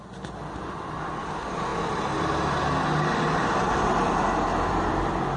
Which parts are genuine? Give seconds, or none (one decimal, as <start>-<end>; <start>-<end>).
0.0-5.4